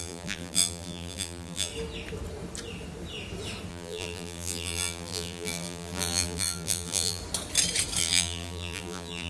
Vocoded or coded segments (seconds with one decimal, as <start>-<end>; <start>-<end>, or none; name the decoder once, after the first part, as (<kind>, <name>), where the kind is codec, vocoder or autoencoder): 0.0-1.7 (vocoder, BigVGAN v2); 3.7-7.2; 8.0-9.3